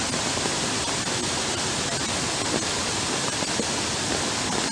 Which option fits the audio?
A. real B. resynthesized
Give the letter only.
A